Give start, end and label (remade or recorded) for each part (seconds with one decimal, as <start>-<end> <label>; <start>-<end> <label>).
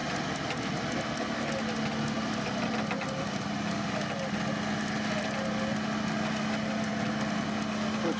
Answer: 0.0-8.2 recorded